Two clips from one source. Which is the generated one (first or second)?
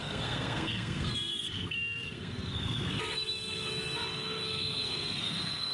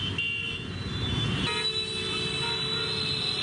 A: first